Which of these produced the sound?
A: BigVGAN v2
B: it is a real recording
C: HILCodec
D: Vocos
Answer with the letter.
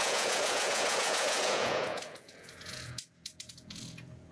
D